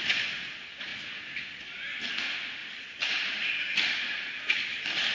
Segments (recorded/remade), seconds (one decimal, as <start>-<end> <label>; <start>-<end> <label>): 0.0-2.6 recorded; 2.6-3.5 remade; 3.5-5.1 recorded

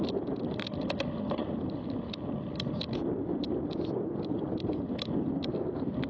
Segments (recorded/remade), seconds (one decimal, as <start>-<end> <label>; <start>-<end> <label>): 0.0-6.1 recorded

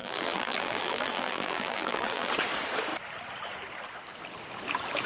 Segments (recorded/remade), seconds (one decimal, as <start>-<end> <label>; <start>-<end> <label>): 0.0-2.3 remade; 2.3-5.1 recorded